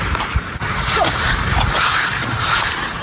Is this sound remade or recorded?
remade